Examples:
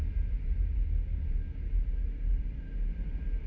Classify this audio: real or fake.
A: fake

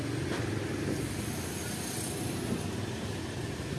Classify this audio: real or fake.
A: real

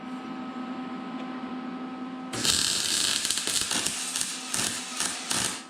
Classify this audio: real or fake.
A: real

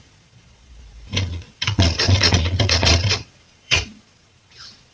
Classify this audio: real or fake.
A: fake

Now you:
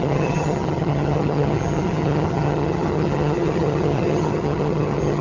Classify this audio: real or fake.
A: fake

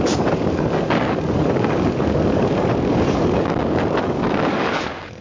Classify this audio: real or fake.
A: fake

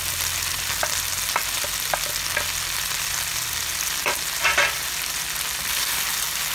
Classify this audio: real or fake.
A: real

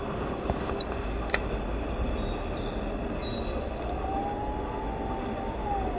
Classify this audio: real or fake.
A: real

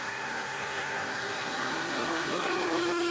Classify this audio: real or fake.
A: fake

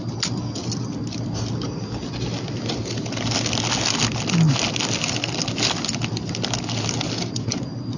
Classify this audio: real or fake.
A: real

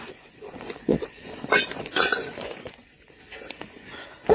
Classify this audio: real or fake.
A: fake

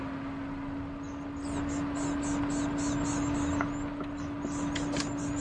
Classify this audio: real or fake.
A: real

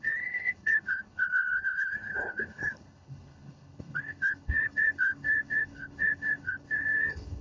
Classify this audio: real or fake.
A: fake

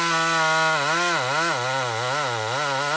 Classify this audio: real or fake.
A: real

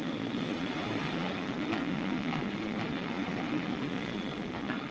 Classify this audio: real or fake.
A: fake